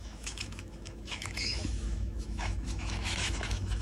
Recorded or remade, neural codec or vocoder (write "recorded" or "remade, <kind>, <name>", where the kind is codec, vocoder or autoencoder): remade, autoencoder, DAC-VAE